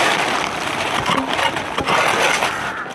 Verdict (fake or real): real